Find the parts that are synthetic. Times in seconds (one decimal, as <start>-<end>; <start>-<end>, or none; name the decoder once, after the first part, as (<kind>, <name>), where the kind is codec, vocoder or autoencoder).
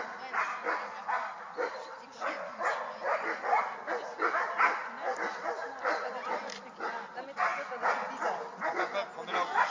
none